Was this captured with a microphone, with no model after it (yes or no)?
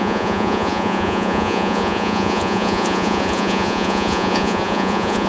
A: no